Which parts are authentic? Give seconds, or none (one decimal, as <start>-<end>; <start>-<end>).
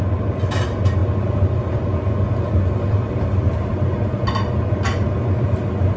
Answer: 0.0-6.0